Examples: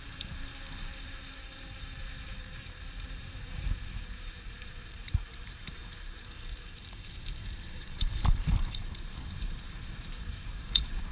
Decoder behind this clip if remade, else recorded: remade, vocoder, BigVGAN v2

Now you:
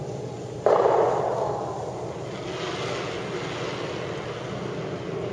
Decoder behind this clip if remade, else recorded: recorded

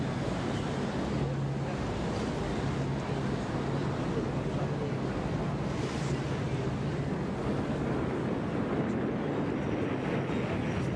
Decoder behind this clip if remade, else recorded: recorded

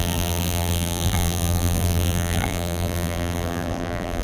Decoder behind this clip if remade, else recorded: remade, vocoder, BigVGAN v2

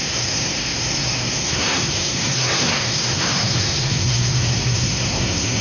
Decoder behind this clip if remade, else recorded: remade, codec, SNAC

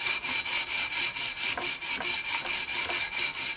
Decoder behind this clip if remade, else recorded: recorded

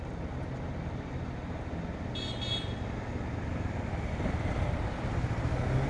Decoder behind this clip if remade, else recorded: recorded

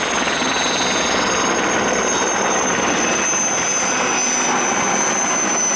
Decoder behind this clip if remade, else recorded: recorded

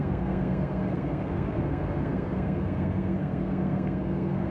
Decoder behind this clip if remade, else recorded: remade, codec, SNAC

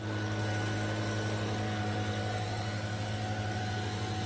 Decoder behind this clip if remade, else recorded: recorded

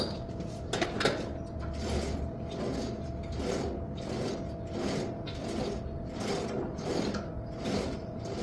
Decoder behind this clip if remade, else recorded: recorded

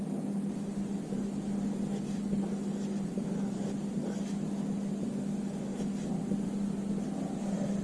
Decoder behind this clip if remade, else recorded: recorded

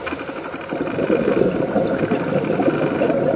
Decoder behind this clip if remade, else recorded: recorded